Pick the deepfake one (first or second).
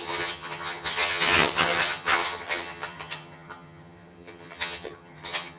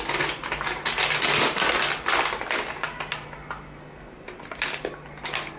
first